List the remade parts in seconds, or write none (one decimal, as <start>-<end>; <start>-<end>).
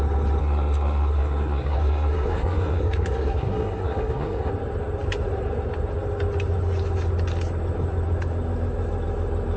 0.4-4.5